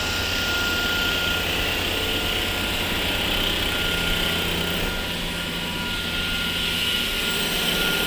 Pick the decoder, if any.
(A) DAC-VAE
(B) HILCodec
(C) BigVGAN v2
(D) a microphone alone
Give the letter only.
D